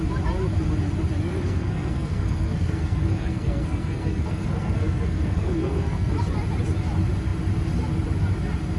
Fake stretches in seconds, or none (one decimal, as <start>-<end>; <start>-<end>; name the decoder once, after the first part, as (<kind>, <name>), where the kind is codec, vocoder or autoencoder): 1.3-6.1 (codec, SNAC)